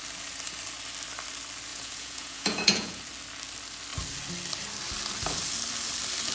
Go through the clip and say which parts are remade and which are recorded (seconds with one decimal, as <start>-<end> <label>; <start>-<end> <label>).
0.0-1.7 recorded; 1.7-3.0 remade; 3.0-6.3 recorded